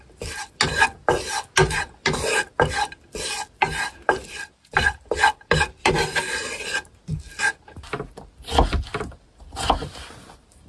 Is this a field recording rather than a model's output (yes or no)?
yes